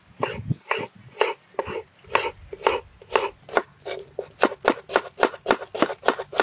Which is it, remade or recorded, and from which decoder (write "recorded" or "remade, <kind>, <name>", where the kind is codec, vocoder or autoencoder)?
recorded